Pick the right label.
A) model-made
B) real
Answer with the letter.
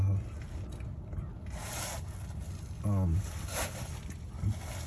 B